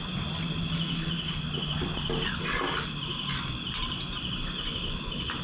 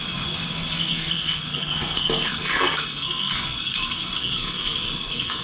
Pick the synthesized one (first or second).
second